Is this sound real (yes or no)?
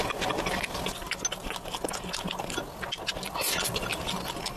yes